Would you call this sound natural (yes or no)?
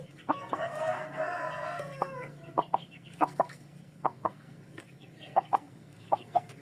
no